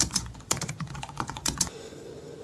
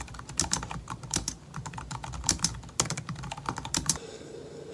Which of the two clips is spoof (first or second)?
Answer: first